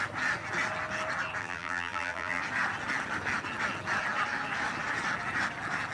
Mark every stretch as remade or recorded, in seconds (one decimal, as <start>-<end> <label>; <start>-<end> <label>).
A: 0.0-1.4 recorded; 1.4-2.4 remade; 2.4-5.9 recorded